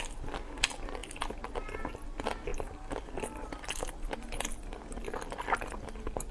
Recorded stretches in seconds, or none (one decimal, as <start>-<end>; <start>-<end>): 0.0-6.3